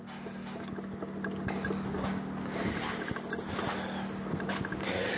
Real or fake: real